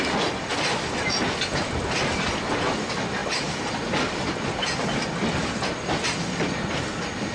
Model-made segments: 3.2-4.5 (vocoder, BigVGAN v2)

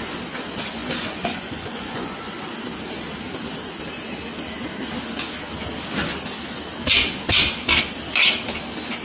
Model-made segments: 0.8-2.5 (vocoder, Vocos)

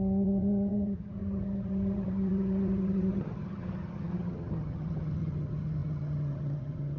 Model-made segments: 0.0-7.0 (vocoder, HiFi-GAN)

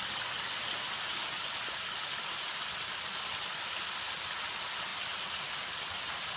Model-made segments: none

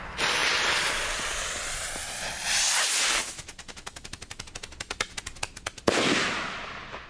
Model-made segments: none

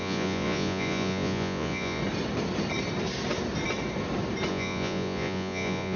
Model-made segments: 0.0-2.0 (vocoder, Vocos); 4.5-6.0

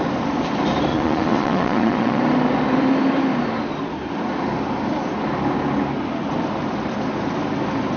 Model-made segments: 0.9-2.2 (vocoder, Vocos)